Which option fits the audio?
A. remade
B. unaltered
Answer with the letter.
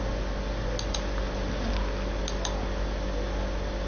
B